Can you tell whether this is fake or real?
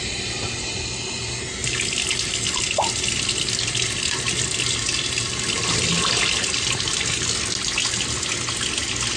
real